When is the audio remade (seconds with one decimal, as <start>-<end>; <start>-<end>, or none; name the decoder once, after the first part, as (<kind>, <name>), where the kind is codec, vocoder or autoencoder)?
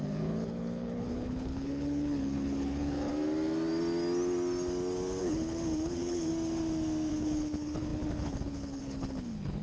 0.0-3.1 (codec, HILCodec); 5.2-6.3; 7.1-9.6